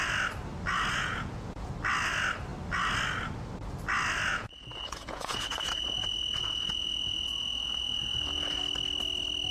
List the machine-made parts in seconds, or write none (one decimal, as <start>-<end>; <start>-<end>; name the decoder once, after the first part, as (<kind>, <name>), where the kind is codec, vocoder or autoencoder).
0.9-1.7 (vocoder, Vocos); 4.3-8.6